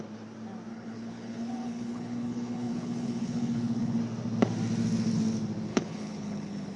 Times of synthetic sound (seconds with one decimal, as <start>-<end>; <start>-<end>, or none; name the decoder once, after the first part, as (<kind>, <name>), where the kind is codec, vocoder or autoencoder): 0.7-4.0 (codec, HILCodec); 5.7-6.8